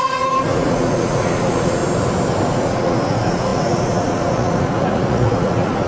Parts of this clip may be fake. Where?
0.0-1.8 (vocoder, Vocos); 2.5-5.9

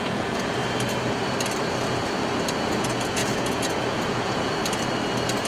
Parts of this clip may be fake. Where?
0.0-0.6 (vocoder, Vocos); 2.6-4.6

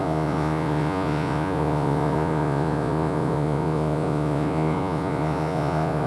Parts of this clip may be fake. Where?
0.0-6.1 (vocoder, Vocos)